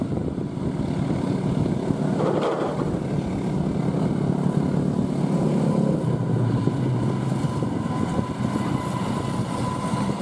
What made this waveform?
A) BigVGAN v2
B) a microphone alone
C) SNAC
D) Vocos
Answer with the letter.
B